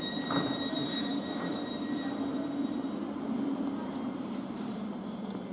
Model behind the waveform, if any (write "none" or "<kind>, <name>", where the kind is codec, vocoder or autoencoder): vocoder, BigVGAN v2